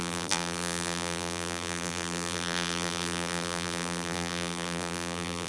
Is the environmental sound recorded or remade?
remade